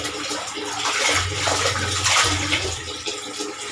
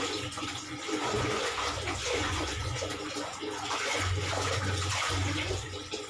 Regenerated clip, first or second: second